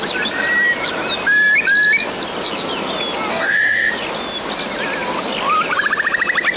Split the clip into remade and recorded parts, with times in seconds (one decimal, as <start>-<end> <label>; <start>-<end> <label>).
0.0-3.3 recorded; 3.3-3.9 remade; 3.9-6.6 recorded